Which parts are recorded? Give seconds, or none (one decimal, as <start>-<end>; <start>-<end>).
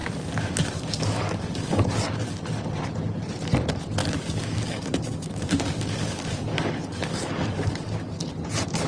1.9-4.0; 7.7-8.9